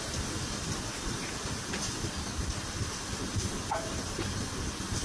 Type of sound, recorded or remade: remade